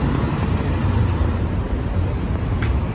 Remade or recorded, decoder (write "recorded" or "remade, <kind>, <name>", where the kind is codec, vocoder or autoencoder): recorded